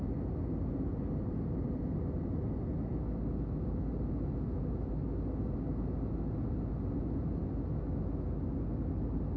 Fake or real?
real